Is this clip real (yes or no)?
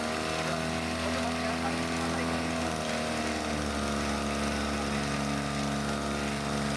yes